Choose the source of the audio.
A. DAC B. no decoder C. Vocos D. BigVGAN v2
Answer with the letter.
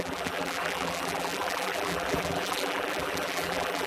D